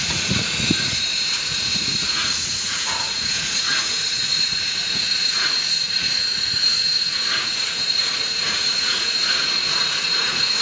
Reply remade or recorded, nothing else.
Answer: remade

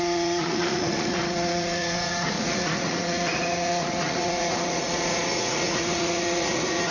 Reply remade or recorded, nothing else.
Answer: remade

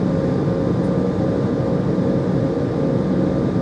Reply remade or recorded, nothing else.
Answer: recorded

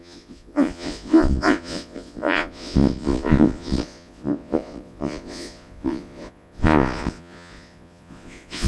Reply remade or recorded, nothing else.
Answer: remade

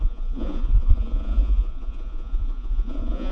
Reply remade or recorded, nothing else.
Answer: remade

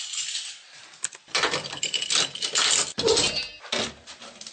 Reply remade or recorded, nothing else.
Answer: recorded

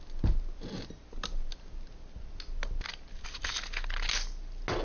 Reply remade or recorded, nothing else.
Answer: recorded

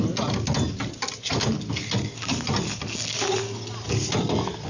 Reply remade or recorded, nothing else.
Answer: recorded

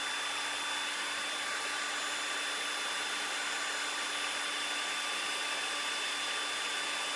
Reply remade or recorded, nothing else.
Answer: recorded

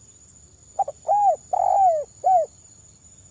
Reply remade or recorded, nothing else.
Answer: recorded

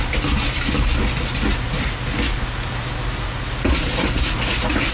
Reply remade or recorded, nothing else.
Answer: recorded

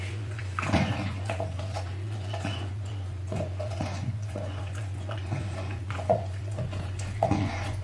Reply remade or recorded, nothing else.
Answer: remade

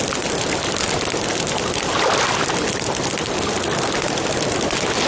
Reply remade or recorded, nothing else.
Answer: recorded